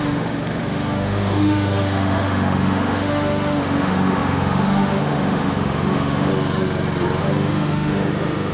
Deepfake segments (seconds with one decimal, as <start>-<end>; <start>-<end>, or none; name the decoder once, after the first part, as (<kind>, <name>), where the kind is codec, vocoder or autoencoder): 0.0-6.3 (autoencoder, DAC-VAE); 7.2-8.5